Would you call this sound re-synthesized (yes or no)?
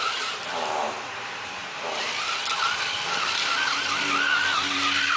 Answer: no